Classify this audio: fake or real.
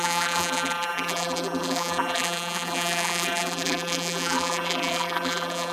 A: fake